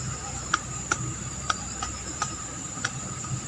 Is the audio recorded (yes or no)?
no